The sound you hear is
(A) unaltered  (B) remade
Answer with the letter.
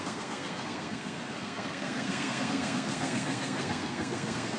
B